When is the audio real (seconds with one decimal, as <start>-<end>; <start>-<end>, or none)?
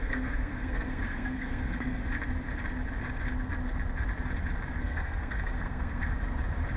2.0-4.8; 6.0-6.8